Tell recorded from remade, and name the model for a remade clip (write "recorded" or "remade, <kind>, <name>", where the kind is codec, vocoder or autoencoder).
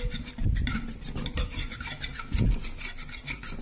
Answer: recorded